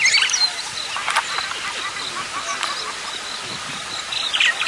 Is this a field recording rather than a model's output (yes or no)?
yes